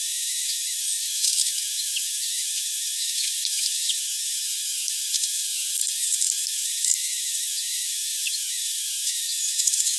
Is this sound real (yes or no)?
no